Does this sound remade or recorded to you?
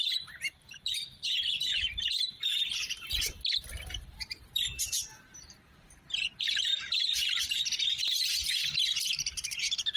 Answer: remade